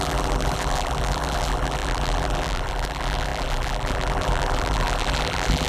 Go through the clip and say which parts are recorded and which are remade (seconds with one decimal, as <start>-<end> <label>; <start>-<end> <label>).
0.0-5.7 remade